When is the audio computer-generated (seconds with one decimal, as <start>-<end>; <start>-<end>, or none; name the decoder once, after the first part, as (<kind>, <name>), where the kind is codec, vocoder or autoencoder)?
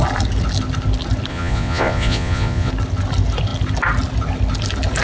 1.3-2.7 (vocoder, Vocos)